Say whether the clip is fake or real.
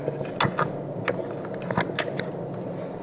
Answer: real